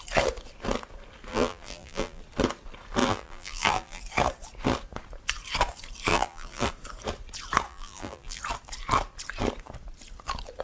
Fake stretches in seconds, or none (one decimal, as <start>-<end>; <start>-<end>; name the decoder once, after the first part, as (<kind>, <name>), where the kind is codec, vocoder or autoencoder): 1.3-2.2 (vocoder, BigVGAN v2); 3.0-4.0; 6.1-6.7; 7.7-8.4